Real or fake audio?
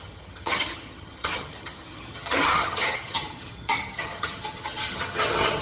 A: fake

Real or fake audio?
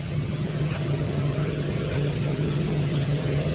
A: fake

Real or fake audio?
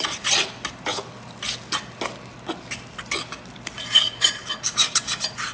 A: real